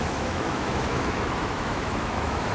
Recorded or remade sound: remade